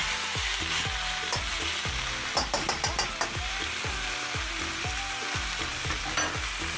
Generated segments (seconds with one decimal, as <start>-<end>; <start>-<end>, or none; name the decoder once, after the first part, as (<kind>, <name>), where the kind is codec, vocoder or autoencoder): none